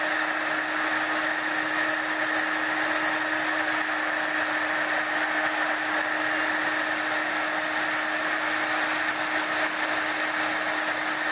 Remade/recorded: recorded